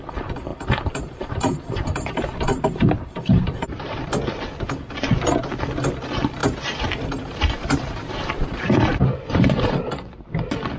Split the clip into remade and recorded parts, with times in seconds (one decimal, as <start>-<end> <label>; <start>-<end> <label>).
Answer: 0.0-0.5 recorded; 0.5-4.1 remade; 4.1-6.4 recorded; 6.4-9.9 remade; 9.9-10.8 recorded